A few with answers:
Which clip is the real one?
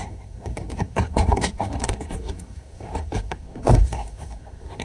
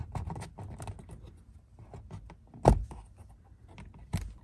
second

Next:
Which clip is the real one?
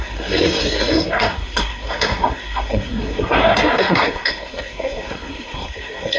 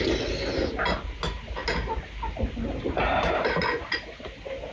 second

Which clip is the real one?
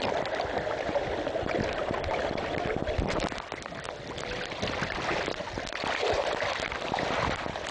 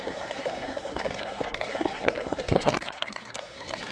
first